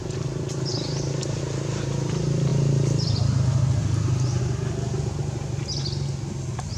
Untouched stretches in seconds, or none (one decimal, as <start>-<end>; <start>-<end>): 0.0-0.7; 1.4-6.8